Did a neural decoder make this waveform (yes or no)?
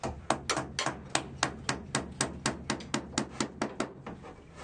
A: no